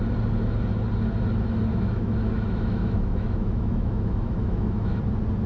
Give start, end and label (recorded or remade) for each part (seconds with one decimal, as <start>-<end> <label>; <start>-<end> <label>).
0.0-1.7 recorded; 1.7-5.0 remade; 5.0-5.5 recorded